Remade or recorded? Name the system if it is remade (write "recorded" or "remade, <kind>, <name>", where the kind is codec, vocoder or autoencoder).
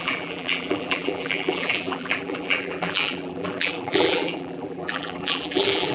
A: remade, vocoder, BigVGAN v2